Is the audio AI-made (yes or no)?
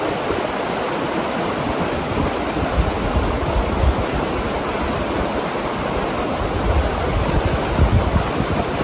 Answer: no